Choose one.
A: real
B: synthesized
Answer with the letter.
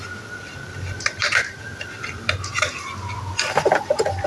A